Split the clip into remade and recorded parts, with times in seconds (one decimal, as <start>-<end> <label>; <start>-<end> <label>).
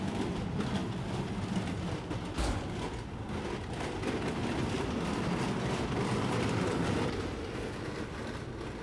0.0-8.8 recorded